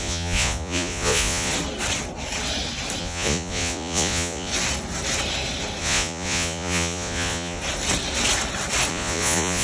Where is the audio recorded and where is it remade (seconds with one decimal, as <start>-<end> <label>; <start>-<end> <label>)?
0.0-1.5 remade; 1.5-3.0 recorded; 3.0-4.5 remade; 4.5-5.8 recorded; 5.8-7.6 remade; 7.6-8.9 recorded; 8.9-9.6 remade